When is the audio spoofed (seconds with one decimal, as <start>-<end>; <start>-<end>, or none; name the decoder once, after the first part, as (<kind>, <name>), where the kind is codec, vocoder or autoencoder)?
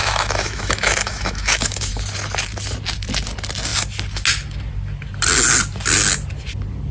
0.0-1.9 (autoencoder, DAC-VAE)